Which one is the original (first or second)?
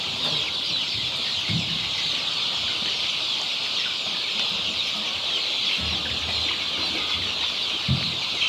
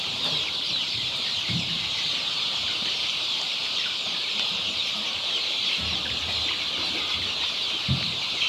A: first